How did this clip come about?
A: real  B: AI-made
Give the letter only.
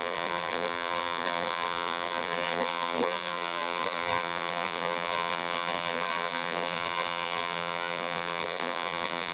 B